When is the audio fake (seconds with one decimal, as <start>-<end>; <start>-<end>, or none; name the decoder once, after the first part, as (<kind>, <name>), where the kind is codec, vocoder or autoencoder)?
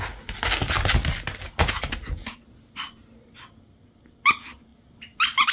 none